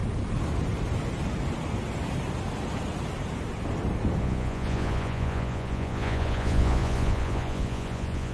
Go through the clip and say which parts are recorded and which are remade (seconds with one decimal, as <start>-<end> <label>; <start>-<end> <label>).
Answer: 0.0-4.2 recorded; 4.2-8.3 remade

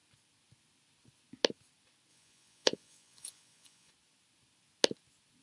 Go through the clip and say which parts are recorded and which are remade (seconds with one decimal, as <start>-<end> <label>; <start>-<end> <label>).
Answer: 0.0-2.1 recorded; 2.1-3.9 remade; 3.9-5.4 recorded

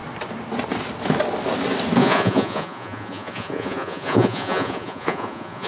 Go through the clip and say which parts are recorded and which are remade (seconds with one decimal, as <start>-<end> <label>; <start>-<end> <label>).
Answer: 0.0-2.0 recorded; 2.0-5.7 remade

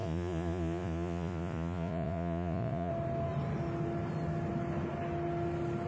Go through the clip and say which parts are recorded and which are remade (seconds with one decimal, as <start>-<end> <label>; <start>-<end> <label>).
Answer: 0.0-2.9 remade; 2.9-5.9 recorded

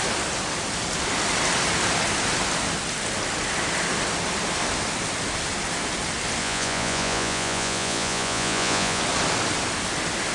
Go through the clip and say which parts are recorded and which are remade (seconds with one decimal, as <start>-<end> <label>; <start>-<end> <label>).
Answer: 0.0-6.4 recorded; 6.4-9.0 remade; 9.0-10.3 recorded

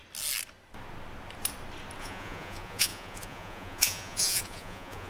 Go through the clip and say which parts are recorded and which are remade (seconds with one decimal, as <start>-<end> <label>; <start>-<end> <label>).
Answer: 0.0-2.0 recorded; 2.0-5.1 remade

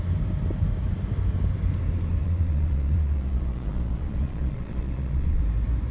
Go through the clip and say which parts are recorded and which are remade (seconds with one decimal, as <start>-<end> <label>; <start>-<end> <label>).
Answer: 0.0-2.2 recorded; 2.2-5.4 remade; 5.4-5.9 recorded

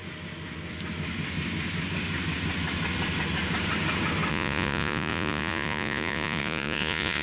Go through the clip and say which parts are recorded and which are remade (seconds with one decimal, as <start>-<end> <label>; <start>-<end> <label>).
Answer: 0.0-4.3 recorded; 4.3-7.2 remade